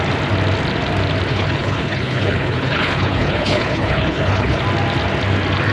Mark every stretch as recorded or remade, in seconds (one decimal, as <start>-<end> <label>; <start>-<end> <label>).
0.0-1.3 recorded; 1.3-4.6 remade; 4.6-5.7 recorded